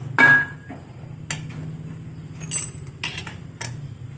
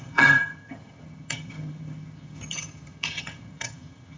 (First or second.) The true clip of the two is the first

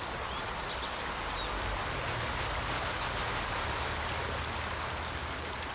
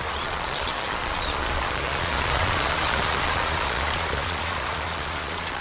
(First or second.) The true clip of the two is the first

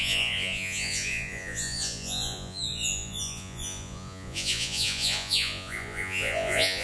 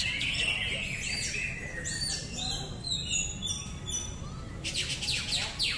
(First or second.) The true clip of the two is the second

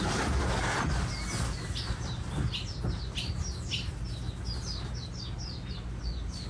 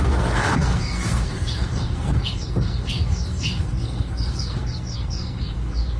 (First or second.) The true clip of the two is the first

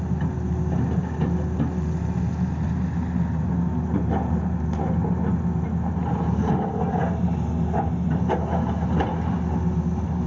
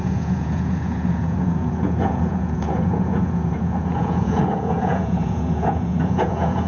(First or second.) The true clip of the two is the first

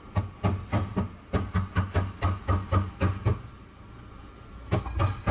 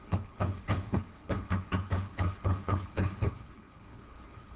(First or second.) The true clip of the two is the first